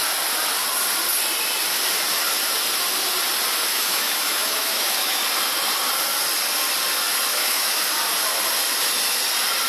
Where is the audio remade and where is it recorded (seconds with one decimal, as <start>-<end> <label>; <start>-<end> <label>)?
0.0-3.7 recorded; 3.7-5.2 remade; 5.2-7.3 recorded; 7.3-7.8 remade; 7.8-9.7 recorded